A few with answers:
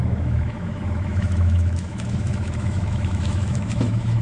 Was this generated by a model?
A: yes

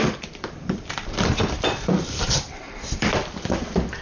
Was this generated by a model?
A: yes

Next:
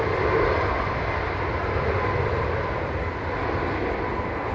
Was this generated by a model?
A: no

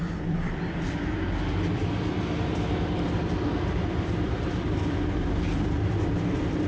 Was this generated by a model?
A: yes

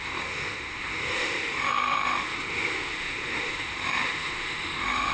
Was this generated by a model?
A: yes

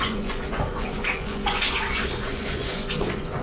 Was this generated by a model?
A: yes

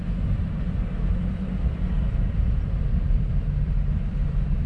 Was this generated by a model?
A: yes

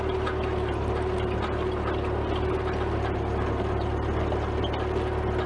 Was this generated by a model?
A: no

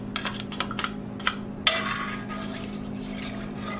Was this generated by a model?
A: no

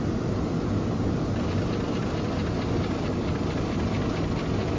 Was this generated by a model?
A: no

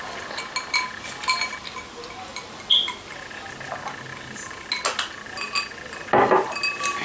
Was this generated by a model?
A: no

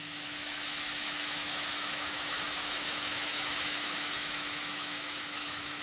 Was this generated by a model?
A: yes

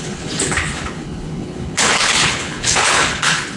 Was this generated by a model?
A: yes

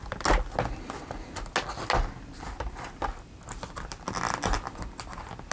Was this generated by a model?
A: no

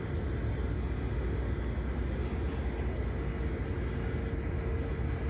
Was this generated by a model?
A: no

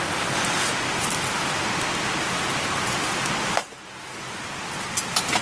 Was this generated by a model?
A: no